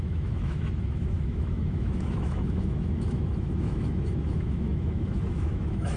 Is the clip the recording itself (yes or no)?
no